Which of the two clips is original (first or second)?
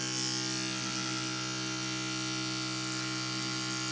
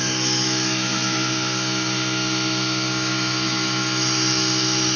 first